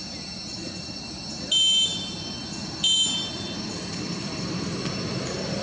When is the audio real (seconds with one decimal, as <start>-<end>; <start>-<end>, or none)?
0.0-5.6